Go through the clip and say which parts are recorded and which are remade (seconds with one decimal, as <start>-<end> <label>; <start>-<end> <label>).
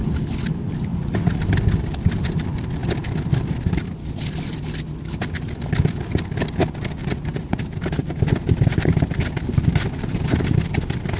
0.0-0.9 recorded; 0.9-1.4 remade; 1.4-7.0 recorded; 7.0-7.6 remade; 7.6-11.2 recorded